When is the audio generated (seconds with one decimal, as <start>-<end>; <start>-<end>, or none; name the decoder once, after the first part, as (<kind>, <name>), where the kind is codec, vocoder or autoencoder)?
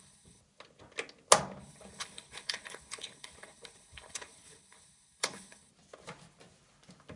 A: 0.0-0.4 (codec, HILCodec); 1.6-5.7